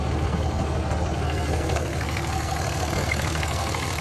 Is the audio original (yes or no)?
no